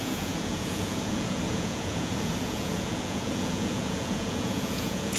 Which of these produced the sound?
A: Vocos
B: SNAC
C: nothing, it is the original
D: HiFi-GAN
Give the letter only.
A